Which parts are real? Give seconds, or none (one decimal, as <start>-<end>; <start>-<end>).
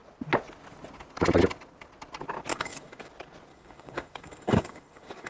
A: 0.0-2.5; 3.1-3.5